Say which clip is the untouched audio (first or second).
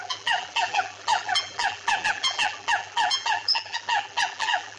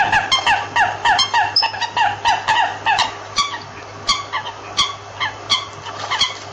second